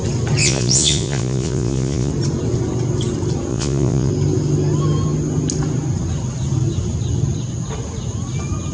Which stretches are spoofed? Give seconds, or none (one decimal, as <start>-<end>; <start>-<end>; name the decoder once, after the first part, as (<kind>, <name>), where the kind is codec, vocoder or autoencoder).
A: 0.4-2.1 (vocoder, Vocos); 3.5-4.1